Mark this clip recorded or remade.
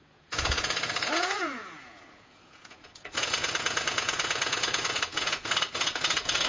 remade